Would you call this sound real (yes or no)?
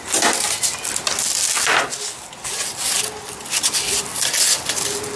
yes